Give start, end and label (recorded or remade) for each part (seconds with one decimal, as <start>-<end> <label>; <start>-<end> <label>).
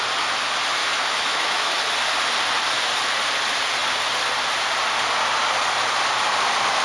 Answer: 0.0-0.8 recorded; 0.8-1.8 remade; 1.8-6.8 recorded